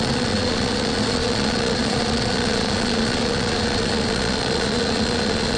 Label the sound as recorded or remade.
remade